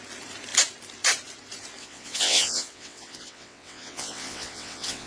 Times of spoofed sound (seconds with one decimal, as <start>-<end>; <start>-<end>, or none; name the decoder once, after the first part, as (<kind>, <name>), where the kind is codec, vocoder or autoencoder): 1.8-5.1 (vocoder, WaveNeXt)